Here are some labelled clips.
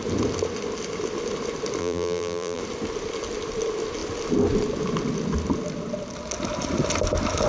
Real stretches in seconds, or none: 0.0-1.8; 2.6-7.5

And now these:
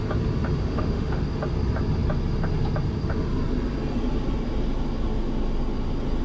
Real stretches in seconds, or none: 0.0-0.6; 1.2-6.2

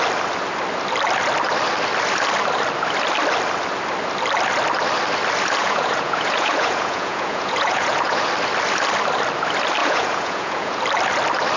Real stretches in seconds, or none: 0.0-5.6; 8.3-9.8; 10.8-11.6

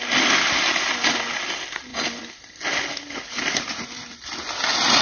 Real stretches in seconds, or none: 0.0-5.0

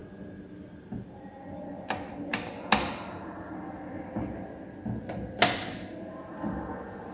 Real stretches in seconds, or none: 0.0-7.1